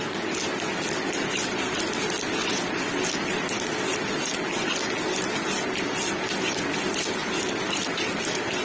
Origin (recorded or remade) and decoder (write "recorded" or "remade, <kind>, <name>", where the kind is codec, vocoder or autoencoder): recorded